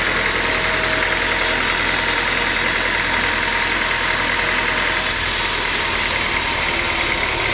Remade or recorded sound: recorded